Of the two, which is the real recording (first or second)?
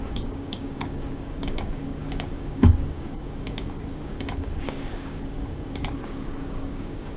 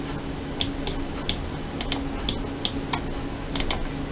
second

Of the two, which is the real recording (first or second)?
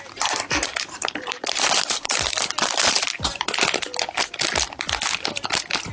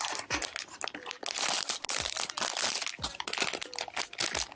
second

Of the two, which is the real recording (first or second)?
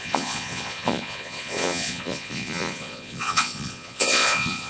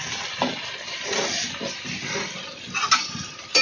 second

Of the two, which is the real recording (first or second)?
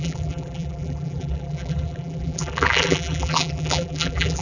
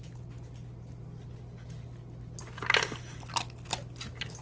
second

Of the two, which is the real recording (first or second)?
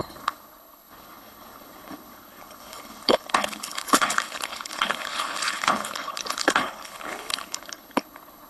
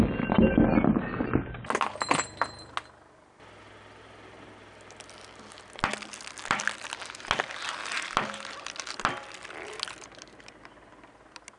second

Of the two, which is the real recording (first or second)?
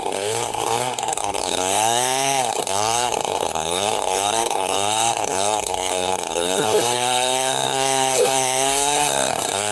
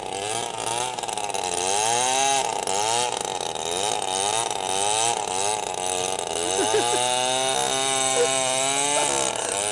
second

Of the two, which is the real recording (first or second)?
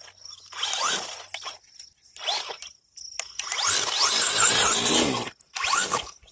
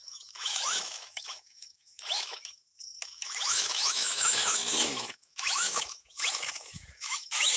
first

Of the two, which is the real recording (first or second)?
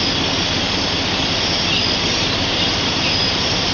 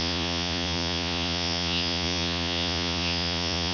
first